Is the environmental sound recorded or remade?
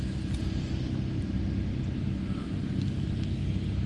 recorded